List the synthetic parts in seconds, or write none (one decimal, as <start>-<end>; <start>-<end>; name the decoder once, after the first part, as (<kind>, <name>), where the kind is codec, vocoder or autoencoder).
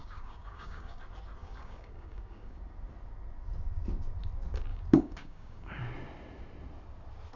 0.0-1.0 (codec, DAC); 1.4-2.6; 4.7-5.8